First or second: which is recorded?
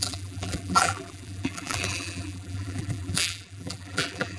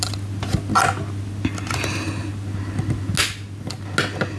second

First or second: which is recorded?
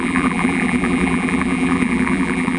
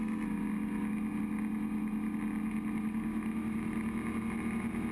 second